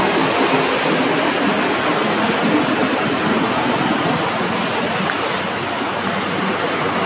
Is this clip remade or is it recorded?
recorded